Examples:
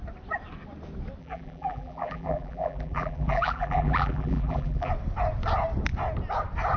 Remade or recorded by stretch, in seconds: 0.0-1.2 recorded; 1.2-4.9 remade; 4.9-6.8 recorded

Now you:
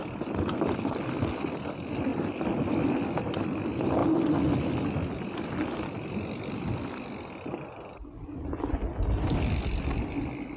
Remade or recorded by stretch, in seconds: 0.0-10.6 recorded